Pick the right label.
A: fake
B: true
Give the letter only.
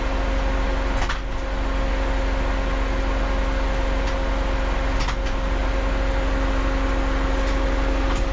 B